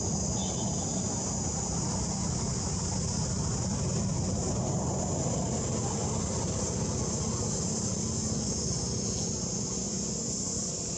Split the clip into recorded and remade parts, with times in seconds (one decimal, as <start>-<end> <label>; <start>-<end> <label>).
0.0-8.2 recorded; 8.2-11.0 remade